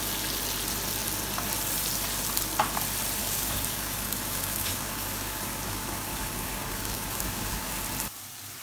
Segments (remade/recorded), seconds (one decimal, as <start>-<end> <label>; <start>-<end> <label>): 0.0-3.2 recorded; 3.2-7.8 remade; 7.8-8.6 recorded